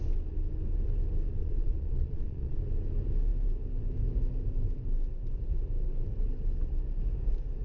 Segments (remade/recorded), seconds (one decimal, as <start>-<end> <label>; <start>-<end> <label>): 0.0-1.4 recorded; 1.4-2.6 remade; 2.6-7.6 recorded